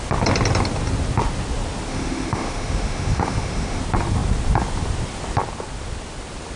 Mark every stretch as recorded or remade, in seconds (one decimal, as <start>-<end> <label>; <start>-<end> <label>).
0.0-1.9 recorded; 1.9-3.8 remade; 3.8-6.6 recorded